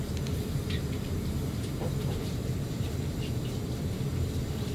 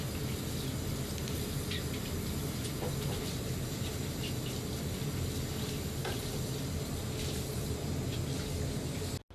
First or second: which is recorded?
second